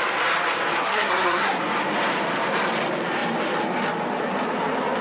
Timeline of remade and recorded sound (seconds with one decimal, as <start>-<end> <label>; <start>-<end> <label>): 0.0-0.8 recorded; 0.8-1.6 remade; 1.6-5.0 recorded